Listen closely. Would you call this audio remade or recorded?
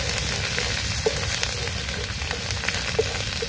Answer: recorded